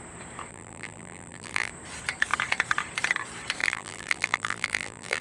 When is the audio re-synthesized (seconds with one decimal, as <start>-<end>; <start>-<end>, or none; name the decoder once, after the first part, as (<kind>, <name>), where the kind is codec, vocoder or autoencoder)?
0.5-1.7 (vocoder, BigVGAN v2); 3.6-5.2